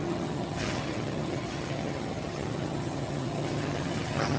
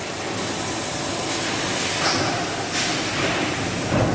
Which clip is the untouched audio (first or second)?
second